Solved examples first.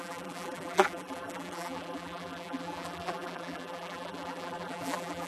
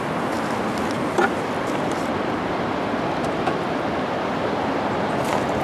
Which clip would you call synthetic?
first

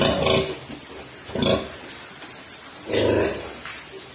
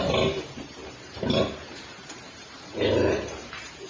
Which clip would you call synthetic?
second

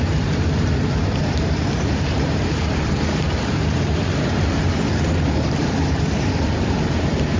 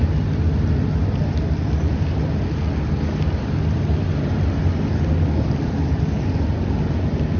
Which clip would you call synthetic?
first